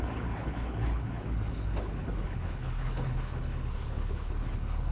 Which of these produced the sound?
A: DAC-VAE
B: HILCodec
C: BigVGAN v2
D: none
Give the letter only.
B